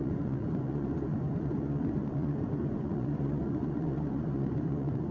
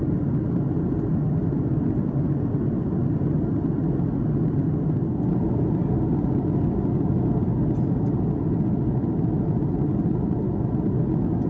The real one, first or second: second